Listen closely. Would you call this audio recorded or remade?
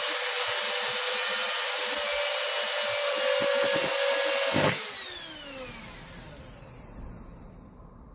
recorded